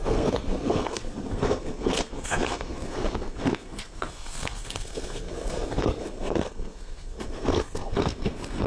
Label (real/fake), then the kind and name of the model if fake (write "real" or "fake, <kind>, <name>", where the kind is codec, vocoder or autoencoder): fake, codec, SNAC